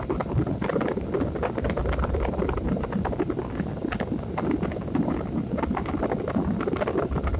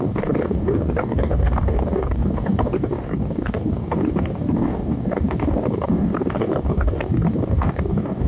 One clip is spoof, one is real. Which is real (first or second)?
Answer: first